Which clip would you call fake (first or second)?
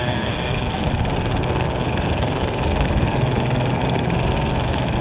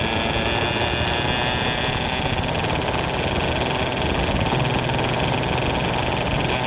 first